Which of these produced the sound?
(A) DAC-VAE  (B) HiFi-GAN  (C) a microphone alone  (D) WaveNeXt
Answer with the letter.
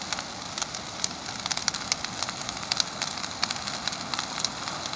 C